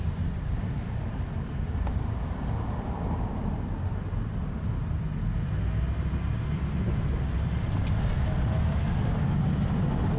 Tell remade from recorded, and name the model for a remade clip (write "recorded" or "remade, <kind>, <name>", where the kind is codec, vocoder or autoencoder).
recorded